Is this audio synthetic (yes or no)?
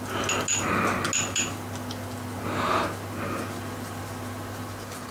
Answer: no